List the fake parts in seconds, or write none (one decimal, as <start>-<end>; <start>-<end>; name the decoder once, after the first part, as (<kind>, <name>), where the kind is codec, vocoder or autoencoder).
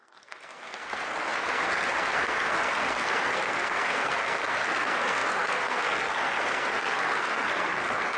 0.0-8.2 (codec, SNAC)